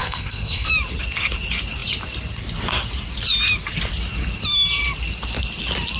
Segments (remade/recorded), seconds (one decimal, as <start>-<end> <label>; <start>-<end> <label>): 0.0-0.7 remade; 0.7-6.0 recorded